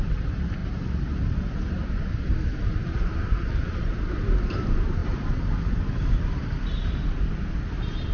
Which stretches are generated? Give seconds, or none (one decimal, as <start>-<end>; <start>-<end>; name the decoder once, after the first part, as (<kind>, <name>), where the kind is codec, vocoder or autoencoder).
0.0-0.6 (vocoder, BigVGAN v2); 2.8-5.0; 5.7-8.1